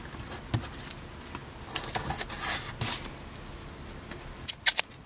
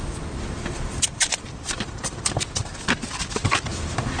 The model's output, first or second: second